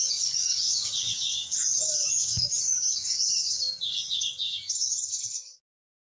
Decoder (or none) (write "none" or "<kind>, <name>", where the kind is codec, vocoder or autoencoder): codec, DAC